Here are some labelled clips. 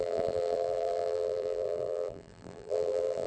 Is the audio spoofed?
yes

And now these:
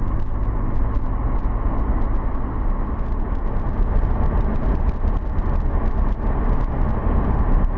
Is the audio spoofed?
no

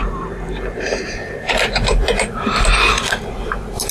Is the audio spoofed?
yes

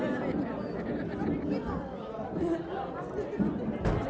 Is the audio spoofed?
no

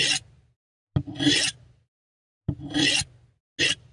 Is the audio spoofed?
no